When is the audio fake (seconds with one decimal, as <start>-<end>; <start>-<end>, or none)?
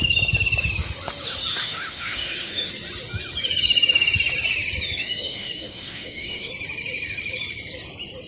1.5-2.7; 5.0-6.5